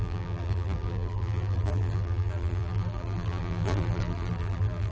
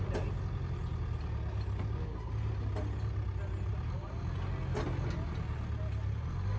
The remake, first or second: first